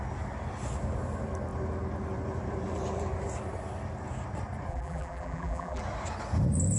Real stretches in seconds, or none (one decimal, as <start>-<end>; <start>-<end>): 0.0-4.7; 5.8-6.8